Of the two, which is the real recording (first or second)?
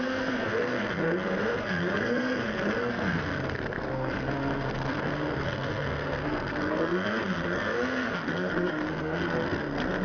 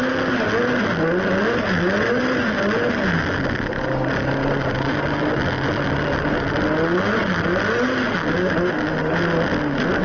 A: second